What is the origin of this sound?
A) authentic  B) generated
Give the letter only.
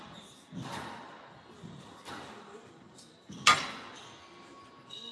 A